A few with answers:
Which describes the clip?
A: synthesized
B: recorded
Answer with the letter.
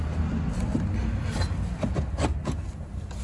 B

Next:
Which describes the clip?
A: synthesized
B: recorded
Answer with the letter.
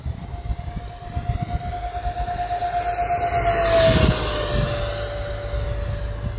B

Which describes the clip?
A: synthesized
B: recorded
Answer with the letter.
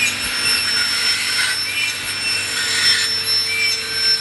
B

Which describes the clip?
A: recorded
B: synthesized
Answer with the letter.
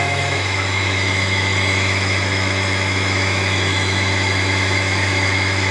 B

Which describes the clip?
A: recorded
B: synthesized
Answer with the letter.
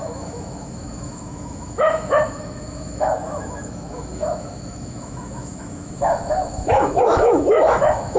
B